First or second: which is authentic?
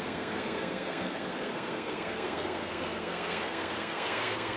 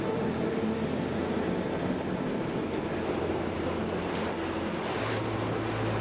second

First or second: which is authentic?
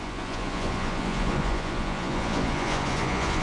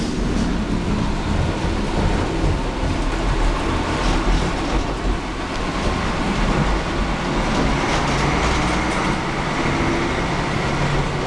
second